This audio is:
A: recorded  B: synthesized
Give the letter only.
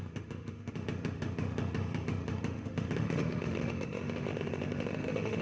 B